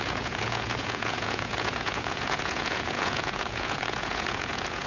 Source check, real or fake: fake